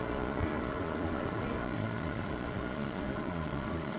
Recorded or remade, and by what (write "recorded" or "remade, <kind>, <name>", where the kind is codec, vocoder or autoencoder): remade, vocoder, Vocos